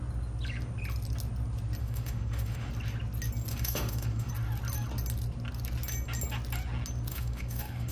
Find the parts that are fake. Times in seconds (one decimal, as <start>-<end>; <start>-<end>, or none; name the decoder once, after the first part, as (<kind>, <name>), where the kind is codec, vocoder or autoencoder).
1.8-2.7 (autoencoder, DAC-VAE); 3.5-4.3; 7.1-7.9